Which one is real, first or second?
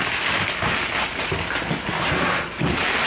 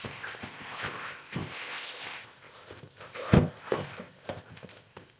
first